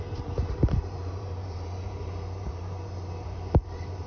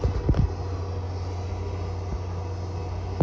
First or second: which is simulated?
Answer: first